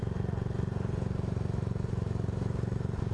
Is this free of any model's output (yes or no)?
yes